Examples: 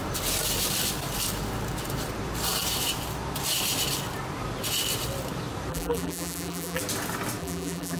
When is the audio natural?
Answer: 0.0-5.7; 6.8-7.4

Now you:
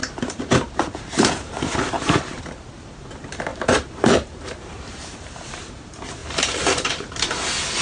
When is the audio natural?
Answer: 2.5-3.5; 5.0-6.2; 7.1-7.8